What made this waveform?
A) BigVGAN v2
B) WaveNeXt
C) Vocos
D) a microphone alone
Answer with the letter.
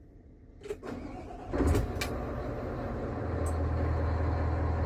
D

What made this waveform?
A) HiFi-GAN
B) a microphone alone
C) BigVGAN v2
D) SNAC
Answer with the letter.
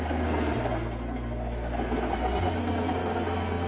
D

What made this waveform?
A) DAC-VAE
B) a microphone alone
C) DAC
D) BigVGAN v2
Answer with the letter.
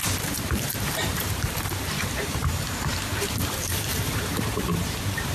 D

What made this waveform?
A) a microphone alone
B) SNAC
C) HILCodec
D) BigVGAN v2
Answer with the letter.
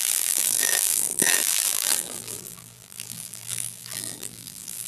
D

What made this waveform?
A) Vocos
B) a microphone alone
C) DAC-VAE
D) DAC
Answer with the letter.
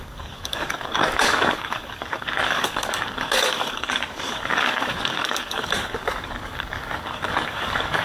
D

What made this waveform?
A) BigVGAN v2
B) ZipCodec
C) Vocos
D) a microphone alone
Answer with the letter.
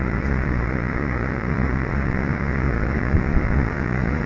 C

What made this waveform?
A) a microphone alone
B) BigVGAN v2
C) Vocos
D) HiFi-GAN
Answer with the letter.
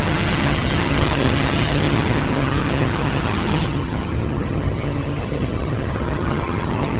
D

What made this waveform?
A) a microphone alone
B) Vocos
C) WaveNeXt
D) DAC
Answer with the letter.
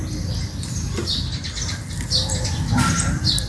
A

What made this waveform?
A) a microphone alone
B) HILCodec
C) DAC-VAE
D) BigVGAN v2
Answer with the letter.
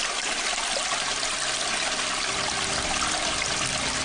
A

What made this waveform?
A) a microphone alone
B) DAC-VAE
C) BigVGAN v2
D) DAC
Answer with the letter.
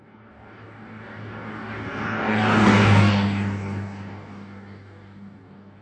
D